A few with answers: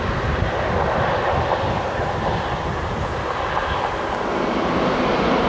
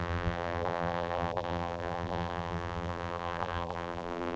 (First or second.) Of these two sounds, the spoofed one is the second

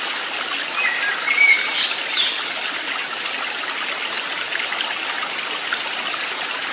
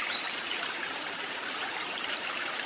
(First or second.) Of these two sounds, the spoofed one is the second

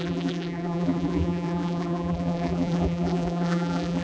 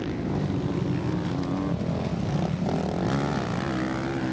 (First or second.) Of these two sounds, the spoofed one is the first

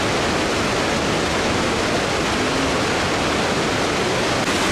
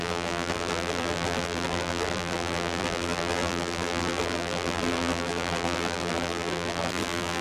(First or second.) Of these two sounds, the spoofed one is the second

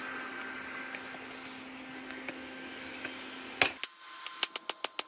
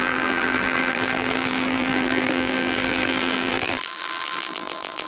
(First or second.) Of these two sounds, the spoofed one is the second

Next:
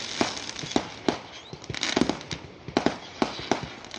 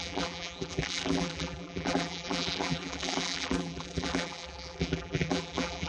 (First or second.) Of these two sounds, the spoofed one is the second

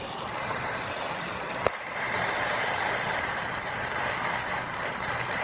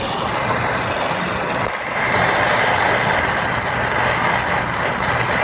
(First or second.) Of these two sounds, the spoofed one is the first